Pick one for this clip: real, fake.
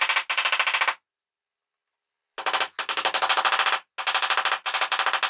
real